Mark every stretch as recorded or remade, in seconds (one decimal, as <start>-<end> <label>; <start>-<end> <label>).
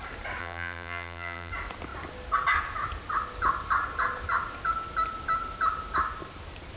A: 0.0-0.4 recorded; 0.4-1.5 remade; 1.5-6.8 recorded